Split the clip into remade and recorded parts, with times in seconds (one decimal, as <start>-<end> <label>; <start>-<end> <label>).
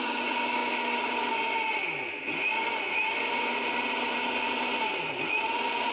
0.0-0.6 remade; 0.6-3.4 recorded; 3.4-5.9 remade